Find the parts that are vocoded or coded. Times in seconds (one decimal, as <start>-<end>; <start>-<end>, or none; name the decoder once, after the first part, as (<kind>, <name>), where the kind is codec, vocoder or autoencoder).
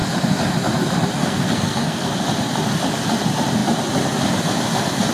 1.2-2.1 (codec, SNAC)